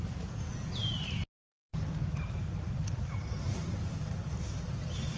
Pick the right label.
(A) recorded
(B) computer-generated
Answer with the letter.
A